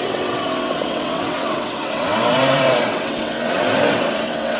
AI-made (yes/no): yes